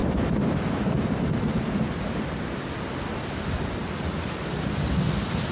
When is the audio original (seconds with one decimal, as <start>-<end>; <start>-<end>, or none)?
0.0-5.5